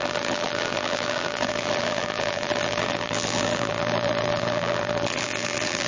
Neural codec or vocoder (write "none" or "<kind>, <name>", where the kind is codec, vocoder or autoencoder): vocoder, BigVGAN v2